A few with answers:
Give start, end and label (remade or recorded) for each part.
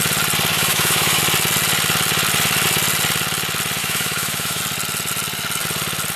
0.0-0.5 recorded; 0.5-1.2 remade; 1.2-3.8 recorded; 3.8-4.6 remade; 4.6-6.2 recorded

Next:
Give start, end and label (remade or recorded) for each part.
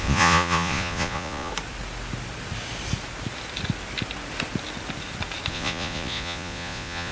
0.0-1.5 remade; 1.5-5.5 recorded; 5.5-7.1 remade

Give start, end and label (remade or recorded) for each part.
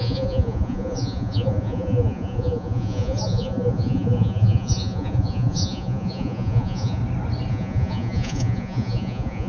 0.0-7.0 remade; 7.0-7.5 recorded; 7.5-9.5 remade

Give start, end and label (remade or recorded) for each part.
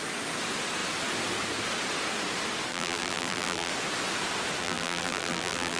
0.0-2.7 recorded; 2.7-3.7 remade; 3.7-4.6 recorded; 4.6-5.8 remade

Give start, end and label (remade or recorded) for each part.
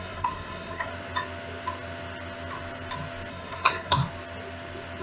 0.0-0.9 remade; 0.9-3.3 recorded; 3.3-4.0 remade; 4.0-5.0 recorded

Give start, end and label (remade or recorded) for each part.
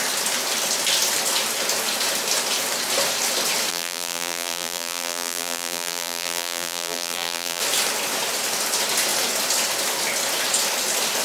0.0-3.7 recorded; 3.7-7.6 remade; 7.6-11.2 recorded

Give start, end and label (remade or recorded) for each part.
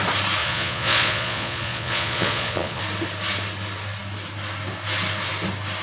0.0-0.4 recorded; 0.4-2.8 remade; 2.8-5.8 recorded